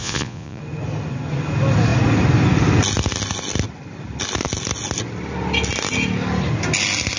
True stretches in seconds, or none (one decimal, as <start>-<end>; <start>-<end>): 0.6-7.2